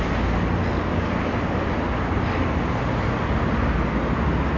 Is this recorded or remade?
recorded